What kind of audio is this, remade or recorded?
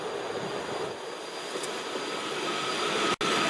recorded